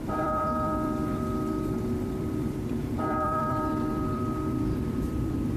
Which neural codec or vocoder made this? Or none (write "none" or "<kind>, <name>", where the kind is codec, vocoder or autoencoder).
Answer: vocoder, BigVGAN v2